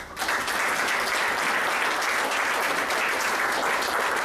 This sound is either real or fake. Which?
real